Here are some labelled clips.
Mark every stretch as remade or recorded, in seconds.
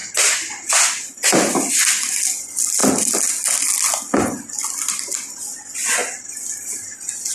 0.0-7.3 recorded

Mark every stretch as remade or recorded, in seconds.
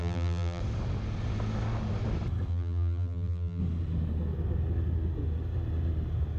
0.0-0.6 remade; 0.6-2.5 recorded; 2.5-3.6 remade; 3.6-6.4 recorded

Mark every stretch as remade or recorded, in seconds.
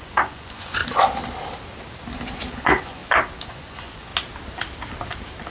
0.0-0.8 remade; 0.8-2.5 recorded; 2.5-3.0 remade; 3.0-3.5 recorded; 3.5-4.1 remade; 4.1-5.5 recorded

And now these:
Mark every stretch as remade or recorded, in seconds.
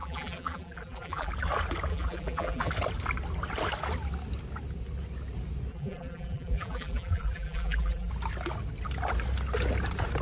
0.0-1.3 remade; 1.3-1.9 recorded; 1.9-2.7 remade; 2.7-5.7 recorded; 5.7-8.1 remade; 8.1-10.2 recorded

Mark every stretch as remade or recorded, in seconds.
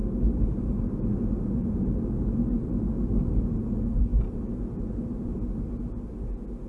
0.0-6.7 recorded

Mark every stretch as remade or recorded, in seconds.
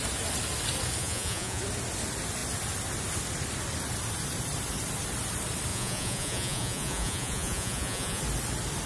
0.0-1.0 recorded; 1.0-1.6 remade; 1.6-5.7 recorded; 5.7-8.2 remade; 8.2-8.9 recorded